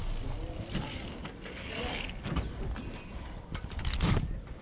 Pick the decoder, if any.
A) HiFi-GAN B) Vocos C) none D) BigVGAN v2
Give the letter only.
C